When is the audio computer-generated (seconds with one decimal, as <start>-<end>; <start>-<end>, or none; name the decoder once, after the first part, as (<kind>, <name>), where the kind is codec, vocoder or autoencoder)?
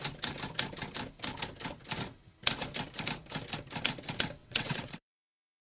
4.4-5.6 (vocoder, WaveNeXt)